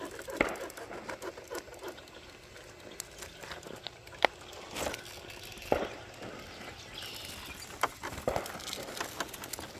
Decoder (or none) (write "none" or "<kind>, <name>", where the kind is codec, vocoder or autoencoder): none